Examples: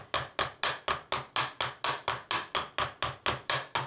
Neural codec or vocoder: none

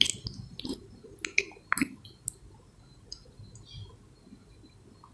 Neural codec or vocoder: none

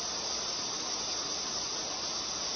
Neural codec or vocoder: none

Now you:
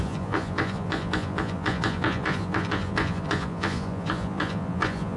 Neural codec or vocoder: vocoder, Vocos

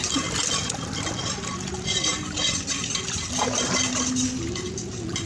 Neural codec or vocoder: none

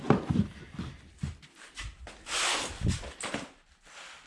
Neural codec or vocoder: none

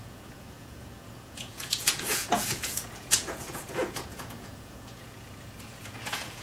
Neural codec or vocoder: vocoder, Vocos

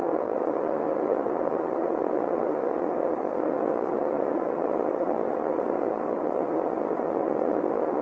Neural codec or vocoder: vocoder, Vocos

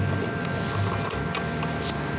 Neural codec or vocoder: none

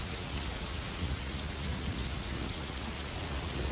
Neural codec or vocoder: vocoder, Vocos